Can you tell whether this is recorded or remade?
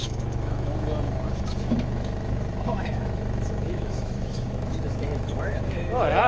remade